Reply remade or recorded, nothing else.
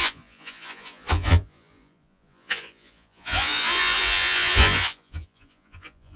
remade